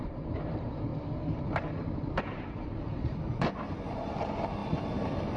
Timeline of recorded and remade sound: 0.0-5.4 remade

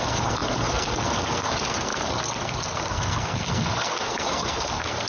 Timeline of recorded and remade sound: 0.0-5.1 remade